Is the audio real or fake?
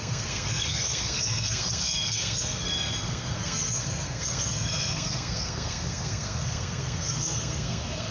fake